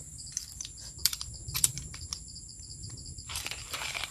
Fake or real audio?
fake